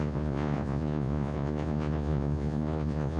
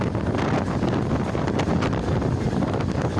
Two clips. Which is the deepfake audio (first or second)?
first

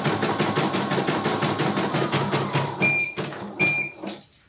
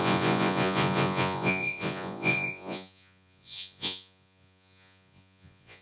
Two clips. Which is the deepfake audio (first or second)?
second